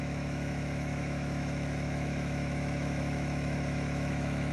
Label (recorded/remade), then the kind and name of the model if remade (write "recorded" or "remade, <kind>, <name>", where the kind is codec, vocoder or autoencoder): remade, autoencoder, DAC-VAE